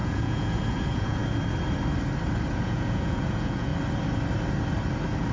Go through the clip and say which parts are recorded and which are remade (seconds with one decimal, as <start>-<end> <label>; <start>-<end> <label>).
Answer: 0.0-1.2 remade; 1.2-2.5 recorded; 2.5-3.7 remade; 3.7-5.3 recorded